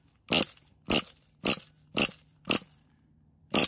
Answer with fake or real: fake